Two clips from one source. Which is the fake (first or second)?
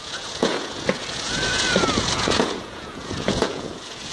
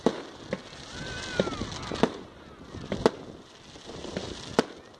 first